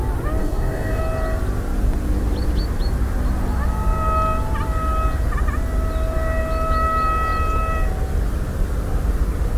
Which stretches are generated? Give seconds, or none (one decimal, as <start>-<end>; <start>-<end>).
0.4-1.0